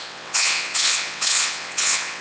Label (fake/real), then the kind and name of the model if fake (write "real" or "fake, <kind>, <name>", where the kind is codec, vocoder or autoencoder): fake, vocoder, WaveNeXt